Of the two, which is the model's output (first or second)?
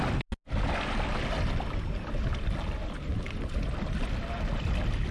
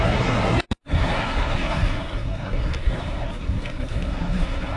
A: second